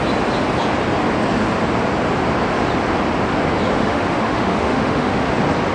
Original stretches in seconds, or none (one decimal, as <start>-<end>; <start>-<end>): 0.0-3.8; 5.3-5.7